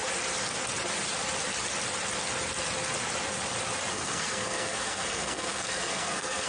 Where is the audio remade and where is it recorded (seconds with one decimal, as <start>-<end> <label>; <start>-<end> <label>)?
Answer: 0.0-3.9 recorded; 3.9-6.5 remade